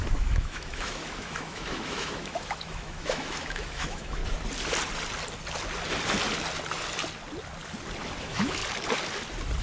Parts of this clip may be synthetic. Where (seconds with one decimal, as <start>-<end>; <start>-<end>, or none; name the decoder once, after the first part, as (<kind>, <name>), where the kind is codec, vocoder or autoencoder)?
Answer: 0.0-4.2 (autoencoder, DAC-VAE); 8.2-8.6

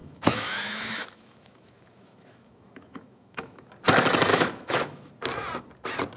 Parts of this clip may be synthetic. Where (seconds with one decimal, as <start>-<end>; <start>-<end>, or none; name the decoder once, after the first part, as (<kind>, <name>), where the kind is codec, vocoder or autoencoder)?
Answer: 0.0-3.7 (autoencoder, DAC-VAE); 4.3-5.1